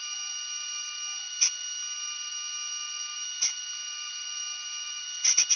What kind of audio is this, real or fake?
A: real